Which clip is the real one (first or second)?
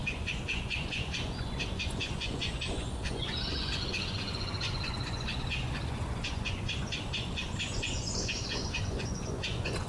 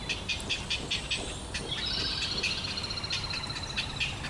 second